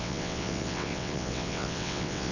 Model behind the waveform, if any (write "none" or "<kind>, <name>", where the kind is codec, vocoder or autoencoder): vocoder, WaveNeXt